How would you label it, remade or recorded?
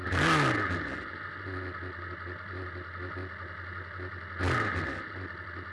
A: recorded